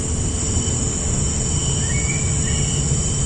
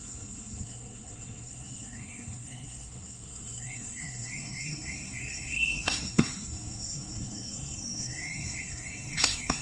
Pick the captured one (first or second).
first